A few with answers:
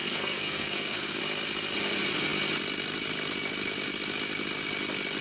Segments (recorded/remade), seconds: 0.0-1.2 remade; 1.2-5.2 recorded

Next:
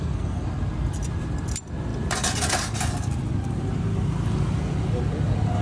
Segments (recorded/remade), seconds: 0.0-0.5 remade; 0.5-5.6 recorded

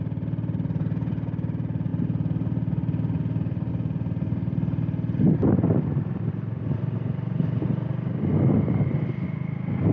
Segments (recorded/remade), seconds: 0.0-9.9 recorded